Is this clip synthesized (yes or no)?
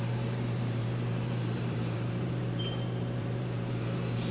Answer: yes